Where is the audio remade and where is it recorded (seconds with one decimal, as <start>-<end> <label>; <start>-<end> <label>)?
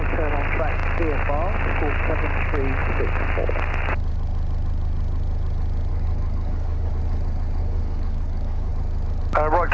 0.0-5.9 recorded; 5.9-6.9 remade; 6.9-7.6 recorded; 7.6-8.7 remade; 8.7-9.7 recorded